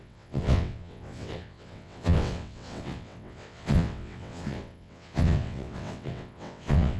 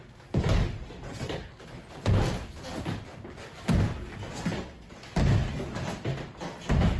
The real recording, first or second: second